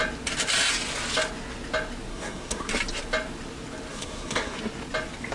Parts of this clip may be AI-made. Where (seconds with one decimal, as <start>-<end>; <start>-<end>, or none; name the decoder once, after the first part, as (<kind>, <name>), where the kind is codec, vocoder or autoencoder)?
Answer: 2.1-2.7 (codec, SNAC); 3.9-4.6